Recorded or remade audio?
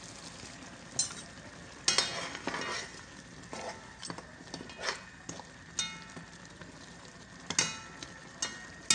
recorded